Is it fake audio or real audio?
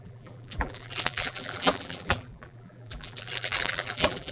fake